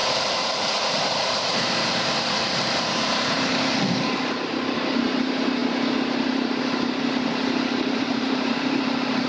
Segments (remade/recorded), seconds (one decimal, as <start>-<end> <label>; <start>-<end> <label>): 0.0-9.3 remade